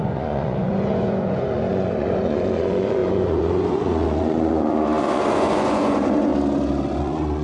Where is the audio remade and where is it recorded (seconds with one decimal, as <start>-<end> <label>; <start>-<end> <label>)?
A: 0.0-6.3 remade; 6.3-7.0 recorded; 7.0-7.4 remade